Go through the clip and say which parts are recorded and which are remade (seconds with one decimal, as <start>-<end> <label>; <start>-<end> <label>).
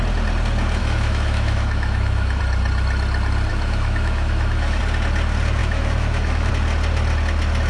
0.0-0.8 recorded; 0.8-2.4 remade; 2.4-3.5 recorded; 3.5-4.8 remade; 4.8-5.6 recorded; 5.6-6.5 remade; 6.5-7.7 recorded